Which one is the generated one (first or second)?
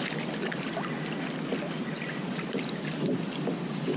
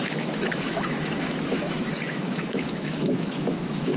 second